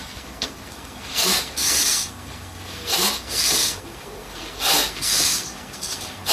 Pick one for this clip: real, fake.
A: fake